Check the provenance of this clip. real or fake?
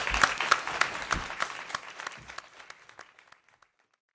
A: fake